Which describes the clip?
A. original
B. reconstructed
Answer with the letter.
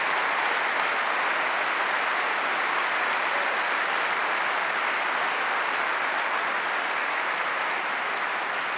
A